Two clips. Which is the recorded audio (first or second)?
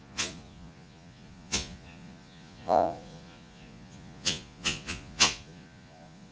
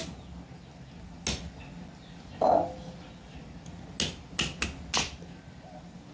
second